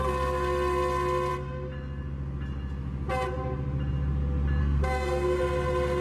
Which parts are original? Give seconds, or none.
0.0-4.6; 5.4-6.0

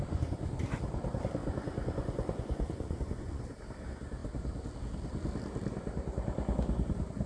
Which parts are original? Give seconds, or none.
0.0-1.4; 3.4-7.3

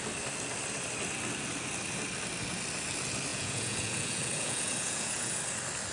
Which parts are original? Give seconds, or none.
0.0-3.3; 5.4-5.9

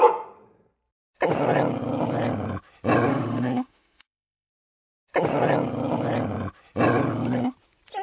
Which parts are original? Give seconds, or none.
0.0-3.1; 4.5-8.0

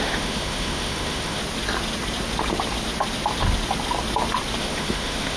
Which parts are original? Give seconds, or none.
1.4-4.6